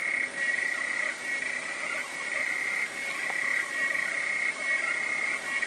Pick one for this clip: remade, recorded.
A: recorded